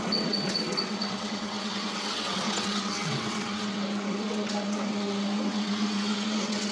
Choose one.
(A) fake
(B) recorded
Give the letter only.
A